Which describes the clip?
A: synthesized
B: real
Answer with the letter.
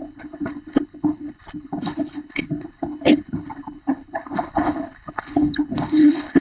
A